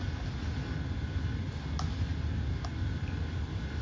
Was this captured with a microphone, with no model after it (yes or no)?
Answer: yes